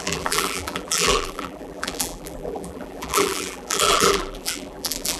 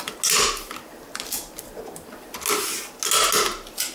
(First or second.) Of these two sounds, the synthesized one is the first